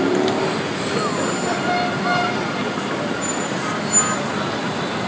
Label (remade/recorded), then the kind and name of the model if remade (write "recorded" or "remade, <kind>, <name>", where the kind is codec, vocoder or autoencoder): recorded